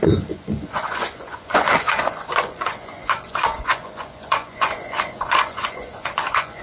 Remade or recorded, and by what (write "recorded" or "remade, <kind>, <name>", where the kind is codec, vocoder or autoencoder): remade, vocoder, Vocos